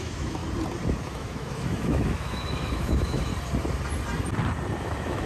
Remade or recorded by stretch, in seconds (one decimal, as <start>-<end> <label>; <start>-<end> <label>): 0.0-0.4 remade; 0.4-1.0 recorded; 1.0-3.3 remade; 3.3-4.8 recorded; 4.8-5.3 remade